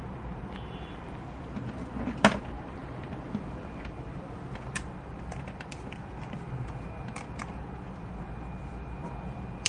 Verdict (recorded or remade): remade